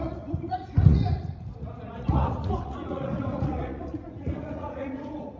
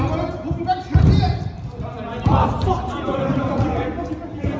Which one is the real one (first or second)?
second